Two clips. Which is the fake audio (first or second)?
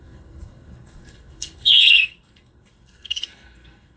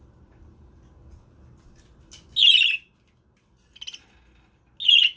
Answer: first